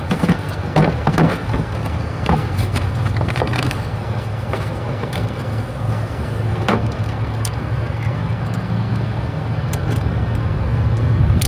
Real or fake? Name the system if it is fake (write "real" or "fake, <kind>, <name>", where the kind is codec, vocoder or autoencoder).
fake, codec, SNAC